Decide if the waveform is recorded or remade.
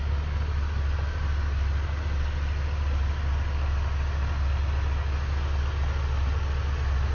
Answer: recorded